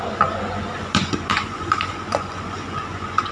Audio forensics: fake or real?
fake